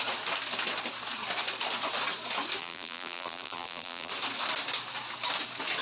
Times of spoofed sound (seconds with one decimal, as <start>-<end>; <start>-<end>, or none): 2.6-4.1